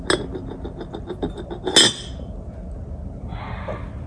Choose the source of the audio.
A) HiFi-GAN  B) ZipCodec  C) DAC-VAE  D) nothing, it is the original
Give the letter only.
D